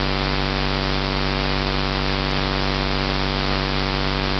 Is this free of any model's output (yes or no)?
yes